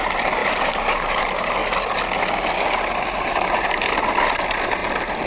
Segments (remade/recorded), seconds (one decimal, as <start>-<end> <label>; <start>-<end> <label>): 0.0-1.6 remade; 1.6-3.0 recorded; 3.0-4.8 remade; 4.8-5.3 recorded